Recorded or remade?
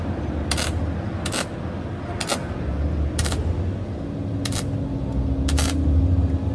recorded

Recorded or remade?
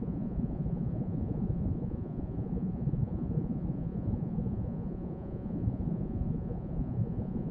remade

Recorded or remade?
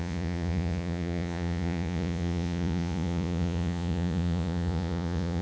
remade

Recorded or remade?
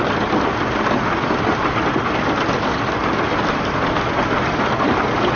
recorded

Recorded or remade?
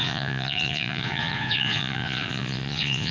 remade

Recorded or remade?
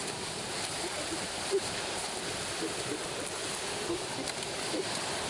recorded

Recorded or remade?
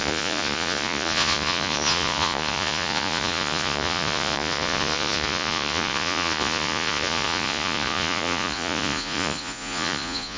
remade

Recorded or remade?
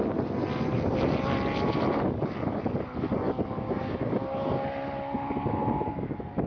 recorded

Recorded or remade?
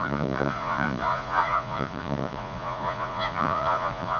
remade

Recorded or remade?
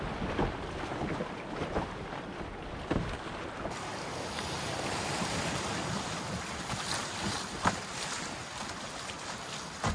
recorded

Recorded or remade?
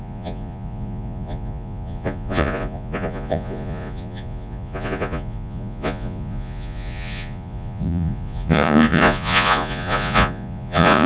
remade